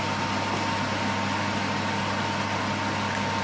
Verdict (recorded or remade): recorded